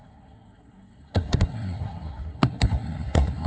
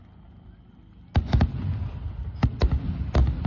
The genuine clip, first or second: second